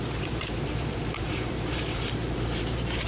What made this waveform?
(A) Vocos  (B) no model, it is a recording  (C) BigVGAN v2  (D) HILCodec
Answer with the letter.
C